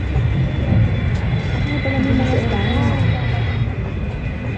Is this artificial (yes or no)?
no